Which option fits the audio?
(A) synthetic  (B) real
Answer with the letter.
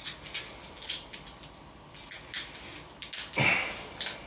B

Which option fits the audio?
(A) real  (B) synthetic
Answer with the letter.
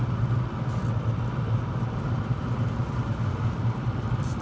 A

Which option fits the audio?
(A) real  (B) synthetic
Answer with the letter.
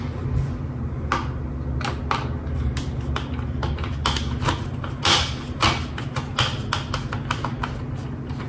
A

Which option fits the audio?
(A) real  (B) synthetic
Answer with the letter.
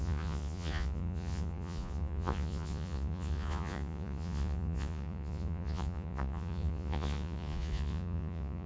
B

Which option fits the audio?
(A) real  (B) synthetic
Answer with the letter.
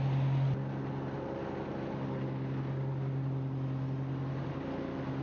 A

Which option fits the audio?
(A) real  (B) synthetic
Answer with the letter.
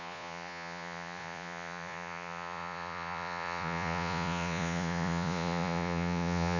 B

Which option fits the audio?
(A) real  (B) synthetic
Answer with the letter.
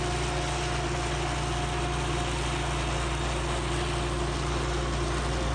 A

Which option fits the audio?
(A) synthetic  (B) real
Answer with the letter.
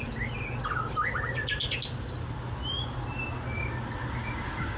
B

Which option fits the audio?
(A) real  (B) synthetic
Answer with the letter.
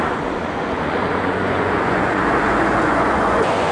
B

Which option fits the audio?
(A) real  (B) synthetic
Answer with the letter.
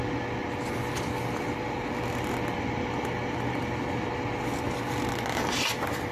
A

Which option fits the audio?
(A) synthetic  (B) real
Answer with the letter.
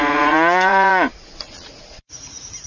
A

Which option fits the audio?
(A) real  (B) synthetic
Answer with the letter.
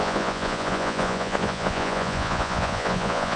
B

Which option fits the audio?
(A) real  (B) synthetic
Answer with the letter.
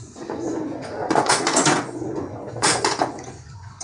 B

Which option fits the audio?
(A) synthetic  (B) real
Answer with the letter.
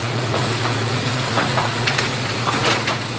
A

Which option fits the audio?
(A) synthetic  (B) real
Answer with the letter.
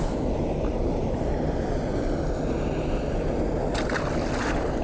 B